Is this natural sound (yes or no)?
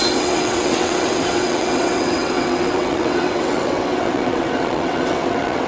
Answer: no